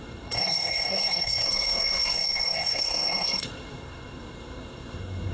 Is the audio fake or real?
fake